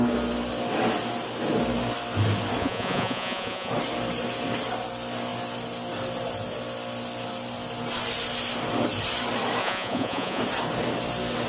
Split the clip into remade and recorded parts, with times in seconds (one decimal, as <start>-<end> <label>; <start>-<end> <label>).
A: 0.0-2.6 recorded; 2.6-3.7 remade; 3.7-9.6 recorded; 9.6-10.4 remade; 10.4-11.5 recorded